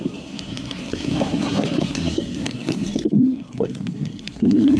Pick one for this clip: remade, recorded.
remade